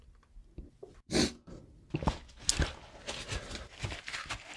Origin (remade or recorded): recorded